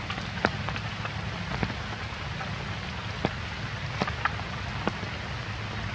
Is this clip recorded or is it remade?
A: recorded